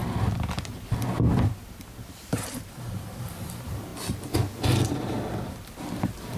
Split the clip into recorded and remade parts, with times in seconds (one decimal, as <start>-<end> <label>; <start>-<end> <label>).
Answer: 0.0-2.3 recorded; 2.3-3.9 remade; 3.9-4.9 recorded; 4.9-6.4 remade